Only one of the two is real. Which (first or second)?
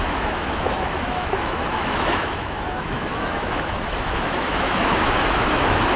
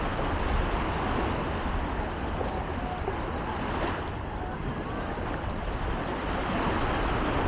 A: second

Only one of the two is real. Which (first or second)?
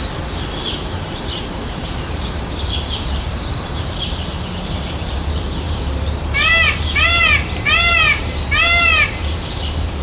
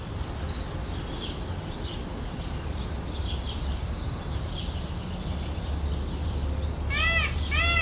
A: second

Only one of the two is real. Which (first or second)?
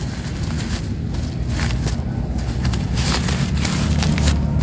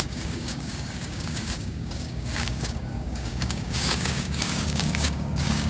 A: first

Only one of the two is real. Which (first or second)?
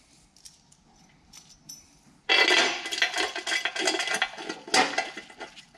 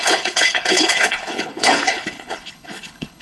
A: first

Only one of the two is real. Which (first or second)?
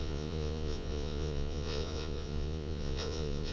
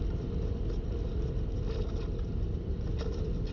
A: second